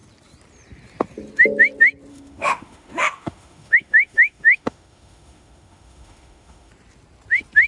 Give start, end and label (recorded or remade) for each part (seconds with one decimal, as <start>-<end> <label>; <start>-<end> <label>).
0.0-2.1 recorded; 2.1-6.7 remade; 6.7-7.7 recorded